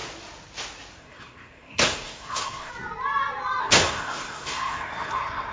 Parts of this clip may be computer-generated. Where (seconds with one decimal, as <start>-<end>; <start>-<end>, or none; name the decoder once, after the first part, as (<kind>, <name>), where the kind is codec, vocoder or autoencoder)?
1.0-2.7 (codec, SNAC); 3.6-5.5